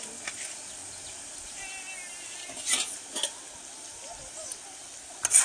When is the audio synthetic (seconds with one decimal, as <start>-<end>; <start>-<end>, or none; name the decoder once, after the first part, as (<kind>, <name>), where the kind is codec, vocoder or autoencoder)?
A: none